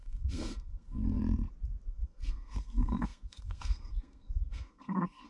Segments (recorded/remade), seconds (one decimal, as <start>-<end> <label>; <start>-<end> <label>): 0.0-1.2 remade; 1.2-1.9 recorded; 1.9-5.3 remade